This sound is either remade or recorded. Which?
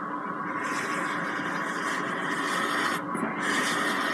recorded